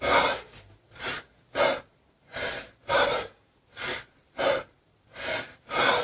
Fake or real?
fake